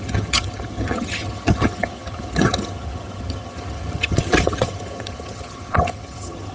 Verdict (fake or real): fake